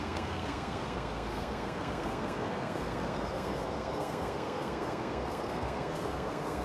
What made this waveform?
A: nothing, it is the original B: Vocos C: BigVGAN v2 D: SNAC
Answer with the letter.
D